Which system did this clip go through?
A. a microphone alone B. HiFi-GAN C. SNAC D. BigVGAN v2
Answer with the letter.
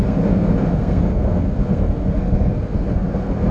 C